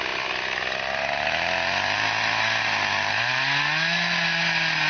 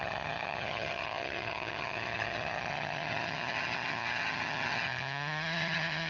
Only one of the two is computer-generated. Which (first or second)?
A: second